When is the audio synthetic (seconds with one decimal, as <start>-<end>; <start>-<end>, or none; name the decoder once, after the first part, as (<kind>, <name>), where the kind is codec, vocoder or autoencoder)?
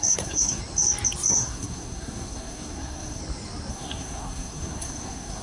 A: 0.0-0.6 (codec, SNAC); 1.3-3.2; 3.7-5.4